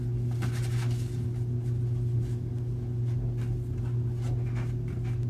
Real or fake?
real